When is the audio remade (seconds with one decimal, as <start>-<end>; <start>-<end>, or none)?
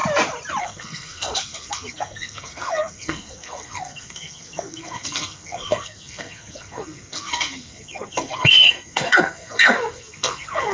0.6-10.7